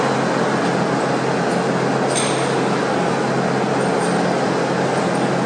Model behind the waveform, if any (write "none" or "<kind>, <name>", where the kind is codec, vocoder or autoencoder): none